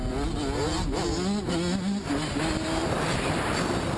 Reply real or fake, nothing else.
real